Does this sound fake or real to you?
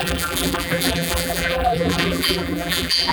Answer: fake